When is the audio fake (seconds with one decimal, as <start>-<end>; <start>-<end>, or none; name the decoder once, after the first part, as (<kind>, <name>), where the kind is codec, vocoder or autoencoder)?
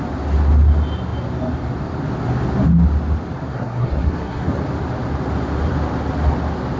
3.5-4.5 (codec, SNAC)